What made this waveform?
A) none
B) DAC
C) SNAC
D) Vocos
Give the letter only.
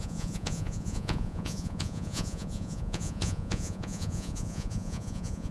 D